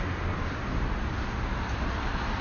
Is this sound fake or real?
real